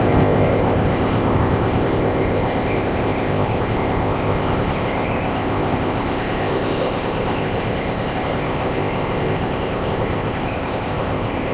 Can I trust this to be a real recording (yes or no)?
no